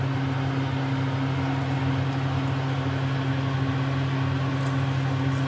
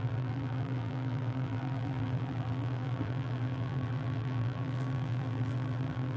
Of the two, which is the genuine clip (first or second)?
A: first